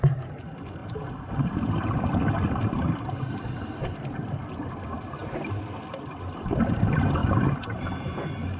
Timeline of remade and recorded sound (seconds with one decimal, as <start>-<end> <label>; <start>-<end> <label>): 0.0-8.6 recorded